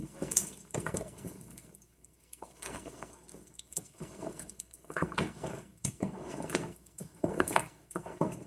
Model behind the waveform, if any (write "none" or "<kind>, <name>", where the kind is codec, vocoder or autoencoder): codec, SNAC